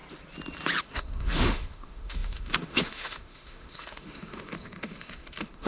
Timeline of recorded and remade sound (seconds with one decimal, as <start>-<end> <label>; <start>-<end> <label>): 0.0-0.8 recorded; 0.8-5.7 remade

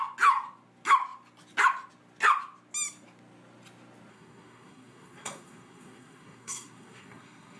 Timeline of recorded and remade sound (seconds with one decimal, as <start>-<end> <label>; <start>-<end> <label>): 0.0-4.1 recorded; 4.1-7.6 remade

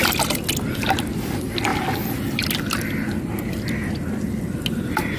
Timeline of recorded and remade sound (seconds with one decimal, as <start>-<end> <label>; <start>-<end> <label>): 0.0-5.2 recorded